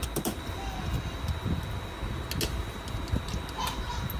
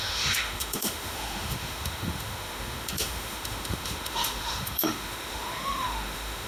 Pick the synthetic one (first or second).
second